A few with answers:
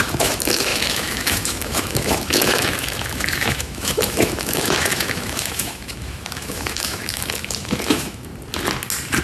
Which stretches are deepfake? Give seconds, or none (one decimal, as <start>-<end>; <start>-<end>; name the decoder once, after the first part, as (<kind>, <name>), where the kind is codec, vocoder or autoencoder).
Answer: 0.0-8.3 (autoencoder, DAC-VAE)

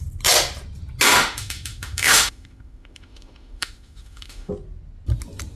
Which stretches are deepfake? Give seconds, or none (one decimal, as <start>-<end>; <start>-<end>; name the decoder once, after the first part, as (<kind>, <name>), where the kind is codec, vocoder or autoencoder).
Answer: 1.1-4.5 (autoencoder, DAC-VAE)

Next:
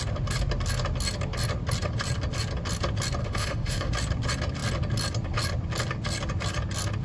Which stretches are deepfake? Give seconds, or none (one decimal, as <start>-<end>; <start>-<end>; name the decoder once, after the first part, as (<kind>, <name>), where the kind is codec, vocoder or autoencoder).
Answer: 3.2-3.9 (autoencoder, DAC-VAE)

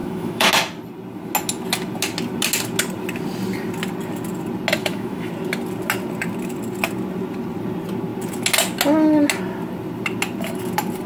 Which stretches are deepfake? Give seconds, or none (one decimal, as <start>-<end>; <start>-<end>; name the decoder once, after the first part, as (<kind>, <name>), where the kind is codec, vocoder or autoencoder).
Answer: 0.0-0.5 (autoencoder, DAC-VAE); 4.8-5.3

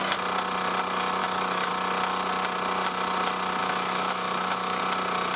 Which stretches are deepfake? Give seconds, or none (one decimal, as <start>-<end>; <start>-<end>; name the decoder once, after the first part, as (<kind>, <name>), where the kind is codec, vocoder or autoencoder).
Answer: 1.2-1.7 (autoencoder, DAC-VAE); 3.6-4.8

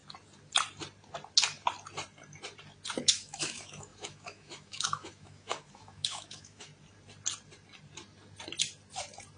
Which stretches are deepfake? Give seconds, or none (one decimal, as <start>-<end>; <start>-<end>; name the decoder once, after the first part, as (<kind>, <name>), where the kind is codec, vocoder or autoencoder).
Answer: 3.0-6.7 (autoencoder, DAC-VAE)

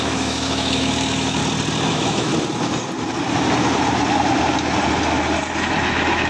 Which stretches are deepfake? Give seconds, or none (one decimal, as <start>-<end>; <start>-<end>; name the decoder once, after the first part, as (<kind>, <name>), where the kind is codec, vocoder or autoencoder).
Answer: 0.0-1.4 (autoencoder, DAC-VAE); 1.9-2.3; 5.8-6.3

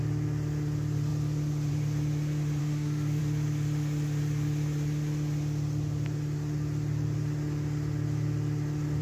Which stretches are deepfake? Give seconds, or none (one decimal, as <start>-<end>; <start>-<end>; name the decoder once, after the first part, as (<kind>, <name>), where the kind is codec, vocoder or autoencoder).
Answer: 2.6-3.2 (autoencoder, DAC-VAE)